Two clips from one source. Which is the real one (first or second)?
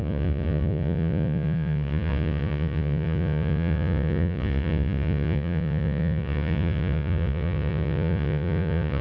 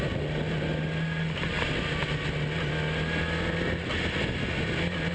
second